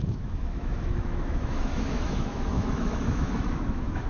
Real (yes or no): no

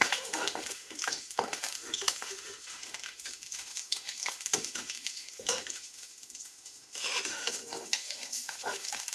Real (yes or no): no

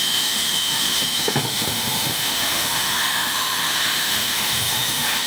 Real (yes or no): no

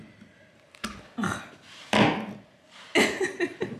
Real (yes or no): yes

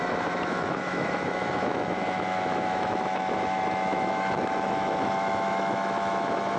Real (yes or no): no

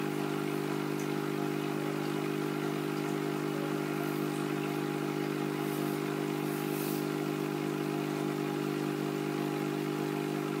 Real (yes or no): yes